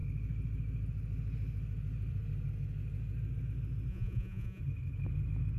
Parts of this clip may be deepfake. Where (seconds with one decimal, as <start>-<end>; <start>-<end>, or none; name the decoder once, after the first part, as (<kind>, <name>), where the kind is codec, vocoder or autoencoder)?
3.9-4.6 (vocoder, Vocos)